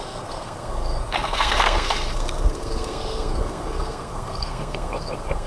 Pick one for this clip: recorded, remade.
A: remade